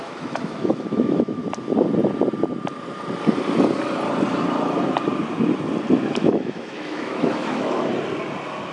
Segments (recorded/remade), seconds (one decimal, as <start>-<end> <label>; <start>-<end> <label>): 0.0-1.4 remade; 1.4-6.1 recorded; 6.1-7.9 remade; 7.9-8.7 recorded